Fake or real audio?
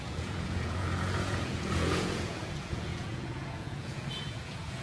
fake